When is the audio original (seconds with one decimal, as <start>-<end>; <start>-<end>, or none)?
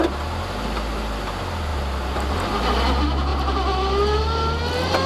0.0-5.1